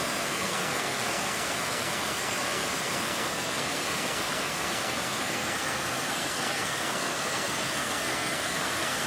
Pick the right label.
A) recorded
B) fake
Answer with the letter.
B